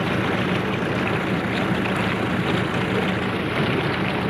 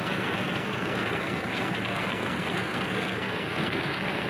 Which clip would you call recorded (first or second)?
first